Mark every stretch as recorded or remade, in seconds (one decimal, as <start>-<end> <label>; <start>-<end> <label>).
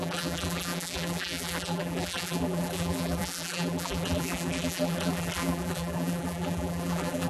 0.0-7.3 remade